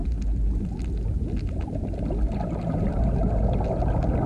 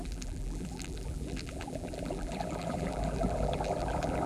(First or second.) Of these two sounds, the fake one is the second